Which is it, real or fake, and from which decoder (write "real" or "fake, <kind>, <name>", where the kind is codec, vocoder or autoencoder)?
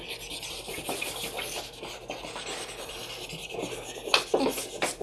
real